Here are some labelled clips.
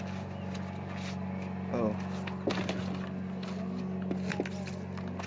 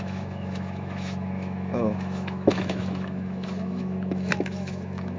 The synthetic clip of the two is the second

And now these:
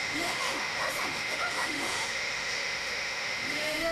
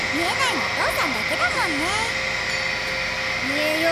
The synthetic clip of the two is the first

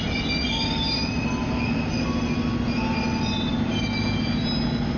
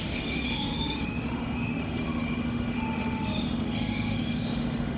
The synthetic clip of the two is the second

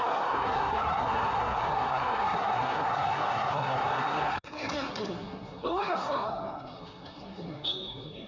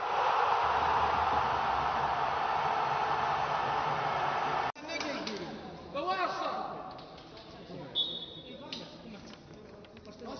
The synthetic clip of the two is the first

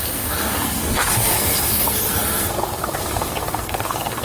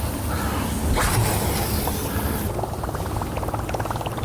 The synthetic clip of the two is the first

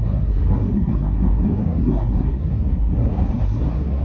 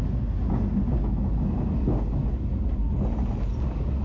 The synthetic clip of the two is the first